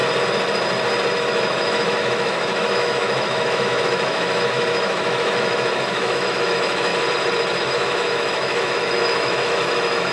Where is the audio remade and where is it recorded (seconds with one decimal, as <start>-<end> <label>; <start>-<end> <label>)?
0.0-1.2 recorded; 1.2-6.9 remade; 6.9-7.6 recorded; 7.6-10.1 remade